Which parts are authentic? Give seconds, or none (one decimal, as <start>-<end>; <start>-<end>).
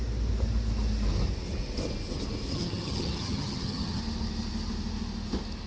0.0-2.5; 4.0-5.7